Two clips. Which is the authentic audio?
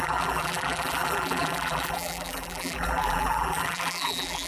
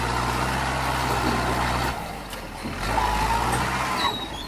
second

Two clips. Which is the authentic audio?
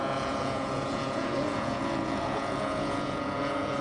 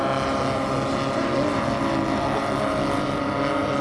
second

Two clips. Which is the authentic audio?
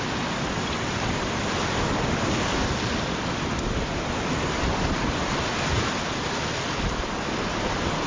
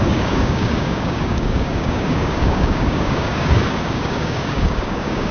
first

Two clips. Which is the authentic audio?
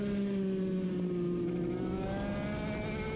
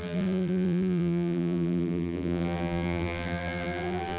first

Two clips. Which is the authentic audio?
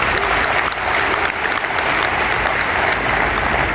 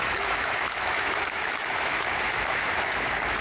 first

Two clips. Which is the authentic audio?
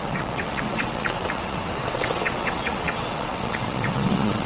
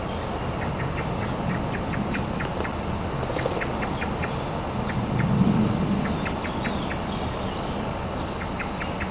second